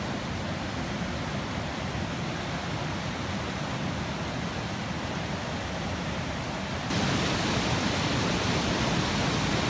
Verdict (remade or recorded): recorded